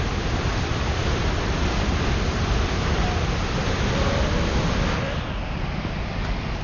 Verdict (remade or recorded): recorded